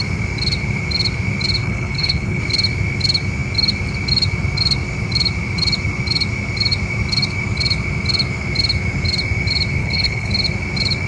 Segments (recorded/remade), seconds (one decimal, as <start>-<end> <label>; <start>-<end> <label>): 0.0-1.6 recorded; 1.6-2.4 remade; 2.4-9.8 recorded; 9.8-10.3 remade; 10.3-11.1 recorded